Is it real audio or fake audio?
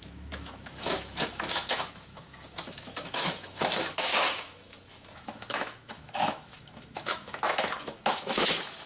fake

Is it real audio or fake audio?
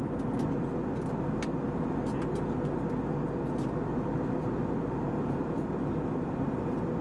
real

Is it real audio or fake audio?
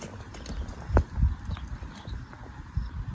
real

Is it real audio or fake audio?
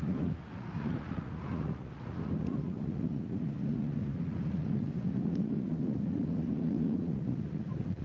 fake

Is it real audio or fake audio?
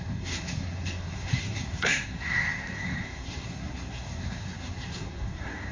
fake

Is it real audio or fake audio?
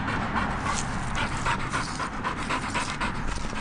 real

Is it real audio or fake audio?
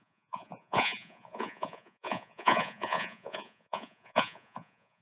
fake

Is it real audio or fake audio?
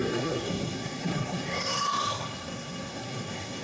fake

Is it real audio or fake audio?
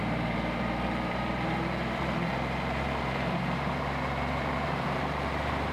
fake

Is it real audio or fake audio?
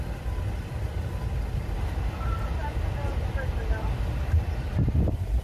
real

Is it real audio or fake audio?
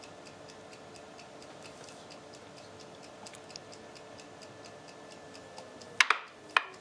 real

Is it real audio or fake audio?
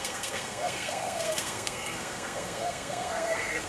fake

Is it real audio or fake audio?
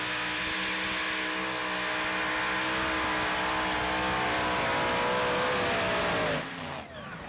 real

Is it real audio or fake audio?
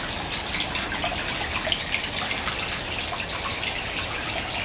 real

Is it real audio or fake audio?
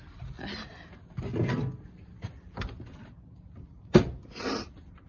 real